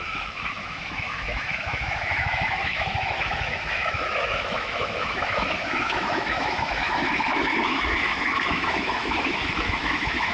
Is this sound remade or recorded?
remade